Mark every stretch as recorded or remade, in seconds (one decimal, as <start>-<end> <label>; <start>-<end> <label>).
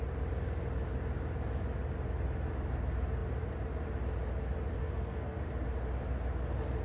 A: 0.0-4.8 recorded; 4.8-5.4 remade; 5.4-6.8 recorded